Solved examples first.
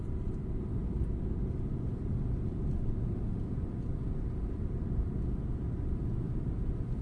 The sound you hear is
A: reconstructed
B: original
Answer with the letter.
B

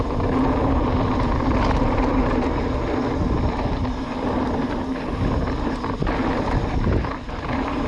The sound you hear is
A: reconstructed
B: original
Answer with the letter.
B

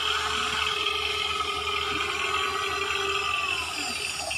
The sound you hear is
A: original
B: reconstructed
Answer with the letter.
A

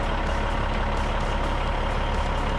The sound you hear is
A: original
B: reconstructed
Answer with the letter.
A